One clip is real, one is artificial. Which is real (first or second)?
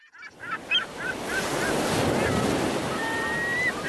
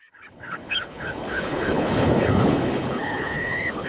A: first